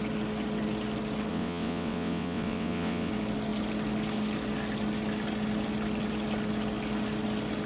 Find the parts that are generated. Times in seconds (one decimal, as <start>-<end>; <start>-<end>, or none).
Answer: 1.3-3.1